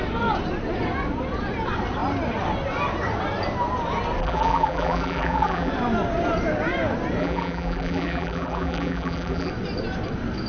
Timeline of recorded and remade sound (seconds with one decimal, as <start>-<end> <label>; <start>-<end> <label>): 0.0-4.2 recorded; 4.2-5.7 remade; 5.7-7.2 recorded; 7.2-9.5 remade; 9.5-10.5 recorded